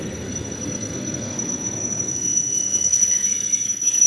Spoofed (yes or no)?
yes